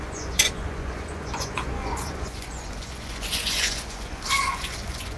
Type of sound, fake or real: fake